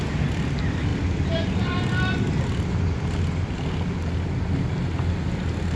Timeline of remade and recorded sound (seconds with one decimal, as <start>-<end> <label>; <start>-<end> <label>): 0.0-5.8 recorded